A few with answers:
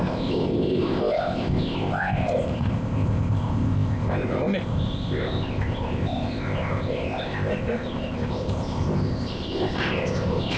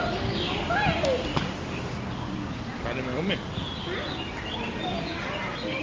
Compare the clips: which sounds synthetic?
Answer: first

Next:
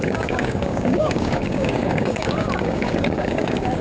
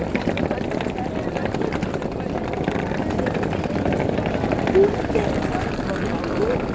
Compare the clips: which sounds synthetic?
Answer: first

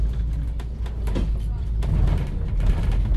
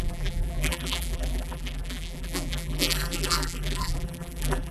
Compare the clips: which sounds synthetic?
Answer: second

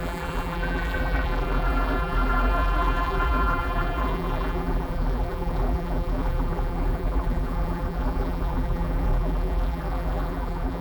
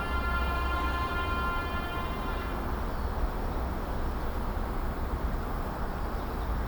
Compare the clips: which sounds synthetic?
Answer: first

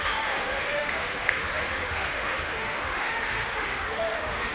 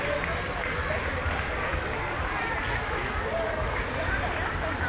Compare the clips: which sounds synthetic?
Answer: first